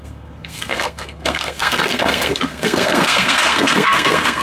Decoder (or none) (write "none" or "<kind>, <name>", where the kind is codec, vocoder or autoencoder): codec, SNAC